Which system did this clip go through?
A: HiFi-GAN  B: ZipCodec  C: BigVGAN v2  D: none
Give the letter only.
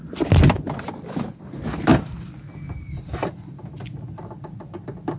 D